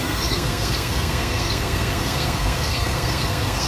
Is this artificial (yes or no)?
yes